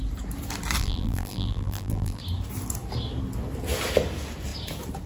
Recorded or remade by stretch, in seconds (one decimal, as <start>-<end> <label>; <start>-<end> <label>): 0.0-0.8 recorded; 0.8-2.2 remade; 2.2-5.1 recorded